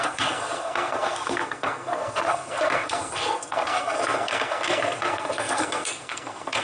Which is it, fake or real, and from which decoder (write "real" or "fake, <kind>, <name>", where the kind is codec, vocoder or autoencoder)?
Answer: fake, codec, SNAC